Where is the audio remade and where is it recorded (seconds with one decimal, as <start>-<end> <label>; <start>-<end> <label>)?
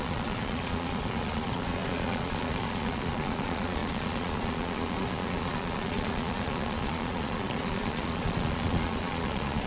0.0-9.7 remade